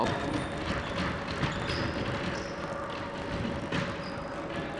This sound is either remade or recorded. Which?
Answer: recorded